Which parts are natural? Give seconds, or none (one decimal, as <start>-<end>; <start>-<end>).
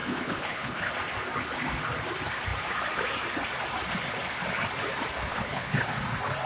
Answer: 0.9-5.3; 5.9-6.5